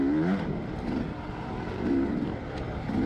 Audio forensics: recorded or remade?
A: recorded